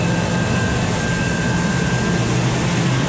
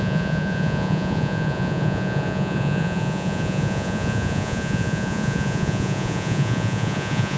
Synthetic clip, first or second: second